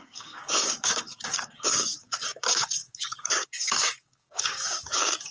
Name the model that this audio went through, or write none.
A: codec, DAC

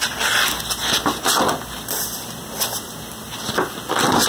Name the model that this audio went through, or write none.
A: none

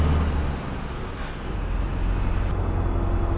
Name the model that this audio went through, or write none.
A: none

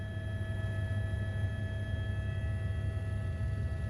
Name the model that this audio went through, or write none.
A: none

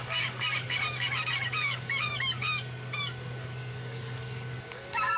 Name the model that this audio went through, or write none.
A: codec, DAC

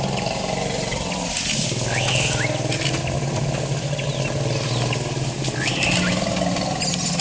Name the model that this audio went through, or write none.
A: none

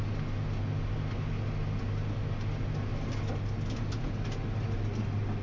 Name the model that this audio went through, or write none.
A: none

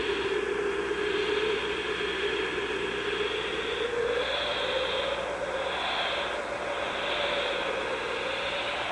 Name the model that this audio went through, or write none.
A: none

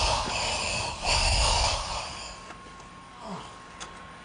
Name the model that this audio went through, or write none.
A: codec, DAC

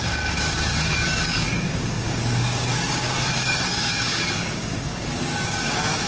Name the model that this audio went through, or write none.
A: codec, DAC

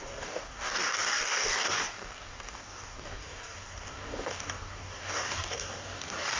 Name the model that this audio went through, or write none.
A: codec, DAC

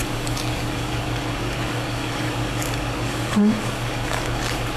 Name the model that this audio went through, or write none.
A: codec, DAC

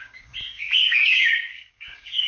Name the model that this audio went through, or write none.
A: codec, DAC